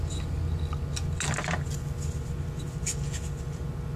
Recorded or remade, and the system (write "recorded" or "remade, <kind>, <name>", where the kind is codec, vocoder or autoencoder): recorded